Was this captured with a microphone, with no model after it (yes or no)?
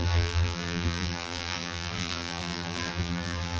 no